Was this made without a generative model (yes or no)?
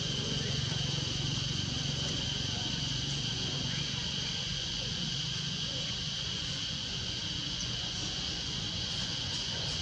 no